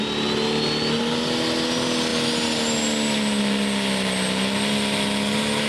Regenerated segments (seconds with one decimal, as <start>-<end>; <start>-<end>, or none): none